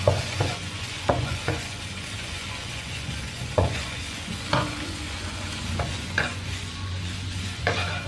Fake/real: fake